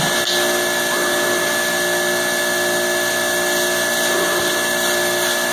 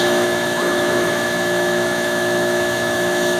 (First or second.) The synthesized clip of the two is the second